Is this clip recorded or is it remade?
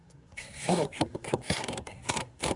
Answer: remade